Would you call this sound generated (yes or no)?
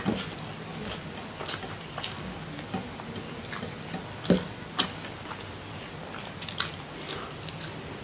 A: no